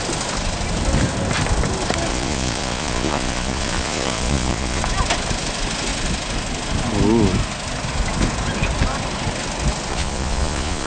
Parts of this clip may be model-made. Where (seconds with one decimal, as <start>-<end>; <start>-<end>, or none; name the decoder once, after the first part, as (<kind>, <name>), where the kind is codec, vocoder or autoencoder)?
2.1-4.8 (vocoder, Vocos); 9.9-10.9